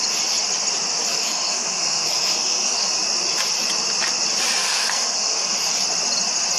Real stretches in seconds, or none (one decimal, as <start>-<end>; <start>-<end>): 0.0-1.1; 2.9-4.6; 5.8-6.6